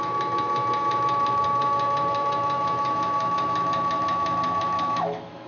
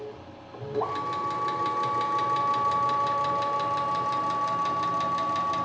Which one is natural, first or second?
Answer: second